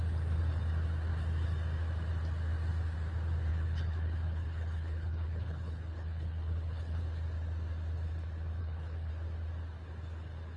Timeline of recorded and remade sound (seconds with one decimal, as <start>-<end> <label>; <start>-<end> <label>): 0.0-3.5 recorded; 3.5-7.0 remade; 7.0-8.6 recorded; 8.6-9.1 remade; 9.1-10.6 recorded